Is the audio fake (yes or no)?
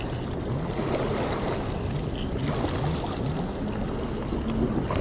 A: no